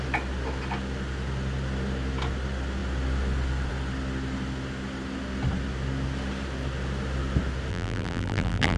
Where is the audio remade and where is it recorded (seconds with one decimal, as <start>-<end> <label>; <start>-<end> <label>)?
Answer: 0.0-7.7 recorded; 7.7-8.8 remade